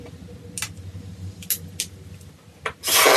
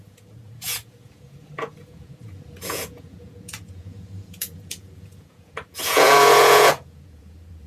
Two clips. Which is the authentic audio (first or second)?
first